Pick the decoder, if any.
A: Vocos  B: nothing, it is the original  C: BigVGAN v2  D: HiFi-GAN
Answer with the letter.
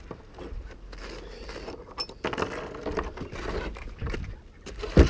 B